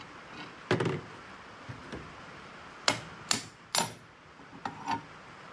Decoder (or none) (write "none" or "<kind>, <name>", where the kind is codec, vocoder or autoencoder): none